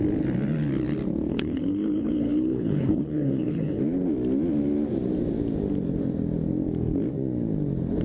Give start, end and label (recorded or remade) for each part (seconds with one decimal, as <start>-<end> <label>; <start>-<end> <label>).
0.0-1.3 recorded; 1.3-3.8 remade; 3.8-8.0 recorded